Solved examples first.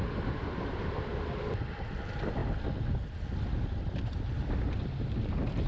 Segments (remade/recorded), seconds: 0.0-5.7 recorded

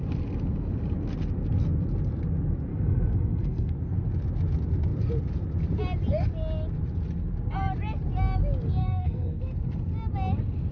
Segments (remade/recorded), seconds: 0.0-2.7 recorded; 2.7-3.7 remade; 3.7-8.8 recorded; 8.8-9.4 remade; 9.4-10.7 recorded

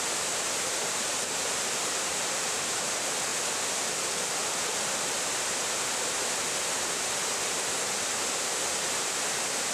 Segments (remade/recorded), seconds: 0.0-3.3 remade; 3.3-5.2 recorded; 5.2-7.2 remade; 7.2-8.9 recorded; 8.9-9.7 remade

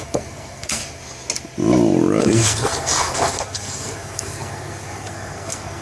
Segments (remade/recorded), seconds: 0.0-0.8 remade; 0.8-2.2 recorded; 2.2-5.8 remade